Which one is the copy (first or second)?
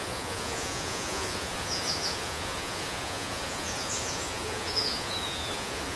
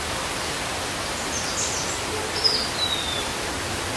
first